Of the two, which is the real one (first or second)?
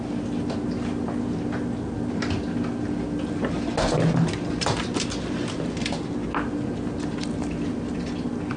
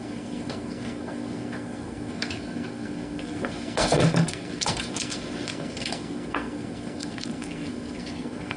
first